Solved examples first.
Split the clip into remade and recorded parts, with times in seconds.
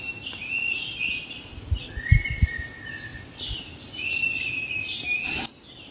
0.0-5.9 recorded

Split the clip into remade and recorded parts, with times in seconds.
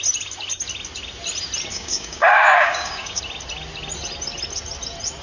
0.0-1.7 recorded; 1.7-3.2 remade; 3.2-5.2 recorded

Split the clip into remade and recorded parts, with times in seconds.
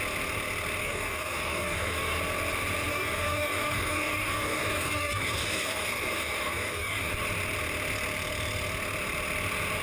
0.0-0.8 recorded; 0.8-2.2 remade; 2.2-2.9 recorded; 2.9-7.1 remade; 7.1-9.8 recorded